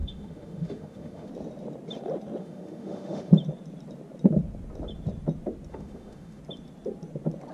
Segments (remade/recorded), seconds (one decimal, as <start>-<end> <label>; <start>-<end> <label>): 0.0-1.3 remade; 1.3-2.4 recorded; 2.4-3.3 remade; 3.3-5.7 recorded; 5.7-6.4 remade; 6.4-7.5 recorded